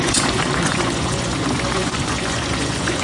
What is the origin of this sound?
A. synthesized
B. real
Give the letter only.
A